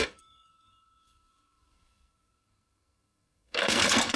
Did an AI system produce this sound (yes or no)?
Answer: yes